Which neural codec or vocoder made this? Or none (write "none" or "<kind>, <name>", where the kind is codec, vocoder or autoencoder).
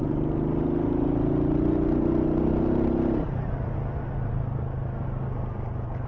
none